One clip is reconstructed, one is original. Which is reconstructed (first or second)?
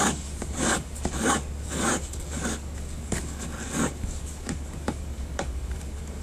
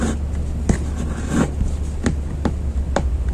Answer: first